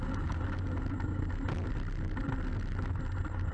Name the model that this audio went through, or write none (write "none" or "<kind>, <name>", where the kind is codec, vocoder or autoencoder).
none